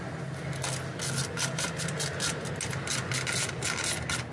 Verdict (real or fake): real